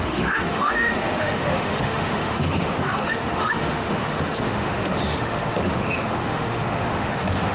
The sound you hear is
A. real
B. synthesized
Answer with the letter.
B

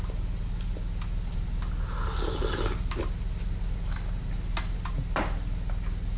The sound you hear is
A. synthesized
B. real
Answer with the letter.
B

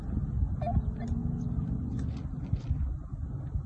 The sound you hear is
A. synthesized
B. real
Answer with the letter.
B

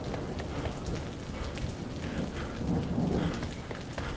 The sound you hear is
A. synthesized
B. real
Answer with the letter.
B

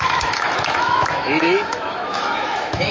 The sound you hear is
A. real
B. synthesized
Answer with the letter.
B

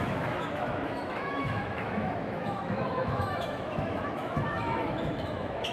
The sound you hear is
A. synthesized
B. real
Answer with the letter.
A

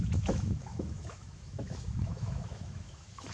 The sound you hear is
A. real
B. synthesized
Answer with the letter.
B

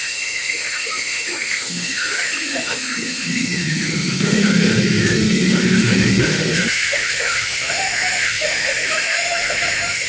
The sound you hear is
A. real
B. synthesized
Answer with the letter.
B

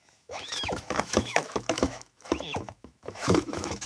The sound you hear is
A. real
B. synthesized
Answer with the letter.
B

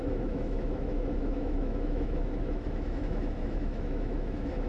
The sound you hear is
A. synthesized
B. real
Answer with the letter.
A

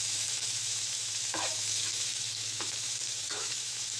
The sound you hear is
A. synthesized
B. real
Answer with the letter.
A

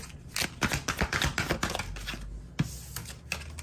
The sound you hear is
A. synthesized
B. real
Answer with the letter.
B